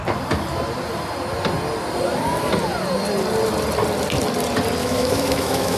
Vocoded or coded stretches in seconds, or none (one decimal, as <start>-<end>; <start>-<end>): 4.8-5.8